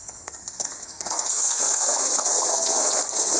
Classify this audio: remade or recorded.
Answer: remade